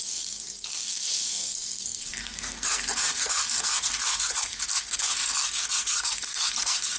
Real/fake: fake